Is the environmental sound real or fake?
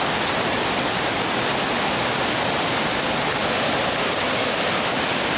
real